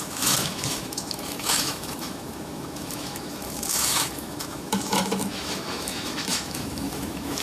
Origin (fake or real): fake